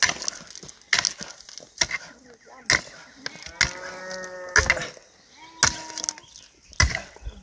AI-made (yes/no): no